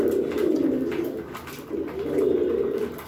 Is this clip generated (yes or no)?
no